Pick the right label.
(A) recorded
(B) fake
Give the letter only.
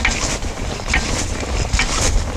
A